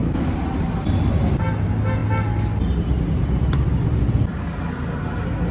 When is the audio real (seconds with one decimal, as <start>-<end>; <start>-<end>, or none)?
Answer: 0.0-5.5